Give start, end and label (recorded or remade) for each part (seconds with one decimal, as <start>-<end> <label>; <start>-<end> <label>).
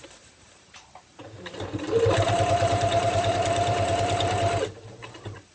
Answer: 0.0-1.2 remade; 1.2-2.1 recorded; 2.1-5.5 remade